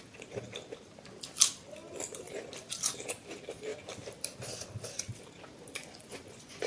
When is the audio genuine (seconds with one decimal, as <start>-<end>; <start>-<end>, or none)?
0.0-5.8